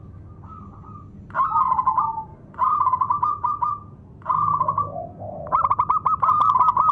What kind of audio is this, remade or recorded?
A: recorded